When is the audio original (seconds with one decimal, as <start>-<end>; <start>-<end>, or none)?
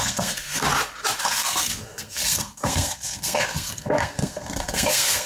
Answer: 0.6-1.2